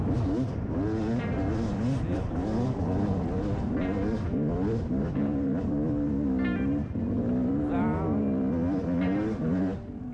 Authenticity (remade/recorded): recorded